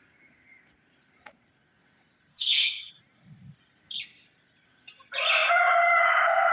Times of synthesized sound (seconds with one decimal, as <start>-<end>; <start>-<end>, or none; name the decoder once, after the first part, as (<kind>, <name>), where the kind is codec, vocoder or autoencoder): 2.3-2.9 (codec, SNAC)